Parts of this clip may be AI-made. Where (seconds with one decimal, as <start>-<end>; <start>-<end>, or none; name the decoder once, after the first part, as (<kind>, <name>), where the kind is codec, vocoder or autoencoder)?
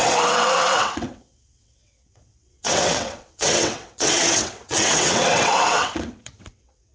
0.0-6.9 (vocoder, WaveNeXt)